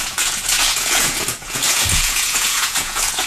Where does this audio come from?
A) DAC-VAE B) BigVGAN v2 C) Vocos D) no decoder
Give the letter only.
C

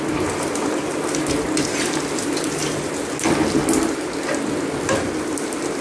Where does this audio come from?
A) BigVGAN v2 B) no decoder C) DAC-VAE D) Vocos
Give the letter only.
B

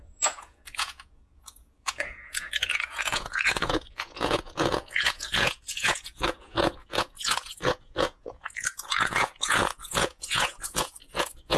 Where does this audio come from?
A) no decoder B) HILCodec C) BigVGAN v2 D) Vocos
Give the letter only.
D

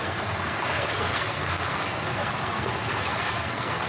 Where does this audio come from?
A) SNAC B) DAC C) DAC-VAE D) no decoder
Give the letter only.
A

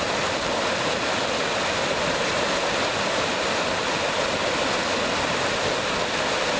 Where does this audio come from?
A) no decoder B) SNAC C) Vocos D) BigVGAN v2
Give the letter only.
A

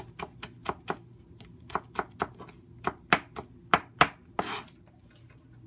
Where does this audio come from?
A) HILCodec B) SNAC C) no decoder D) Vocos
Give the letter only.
C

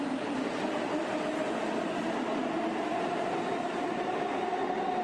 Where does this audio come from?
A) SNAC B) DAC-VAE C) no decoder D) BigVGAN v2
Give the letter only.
D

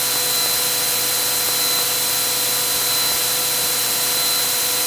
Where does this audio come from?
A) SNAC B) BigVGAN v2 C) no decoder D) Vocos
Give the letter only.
C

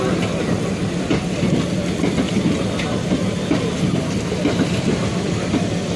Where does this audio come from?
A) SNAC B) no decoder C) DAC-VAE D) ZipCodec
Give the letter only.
B